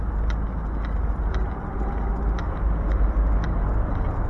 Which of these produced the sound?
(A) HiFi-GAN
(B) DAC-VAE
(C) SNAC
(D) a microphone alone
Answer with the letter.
D